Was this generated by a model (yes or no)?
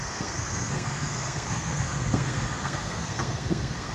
yes